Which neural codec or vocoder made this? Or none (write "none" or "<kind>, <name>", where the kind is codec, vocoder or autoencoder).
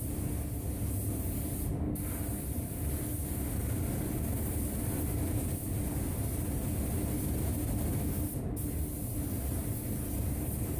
none